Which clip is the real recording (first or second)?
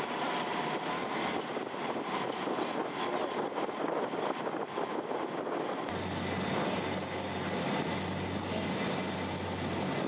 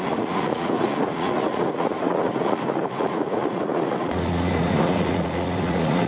first